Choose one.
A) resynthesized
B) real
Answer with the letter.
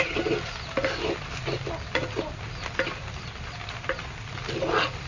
B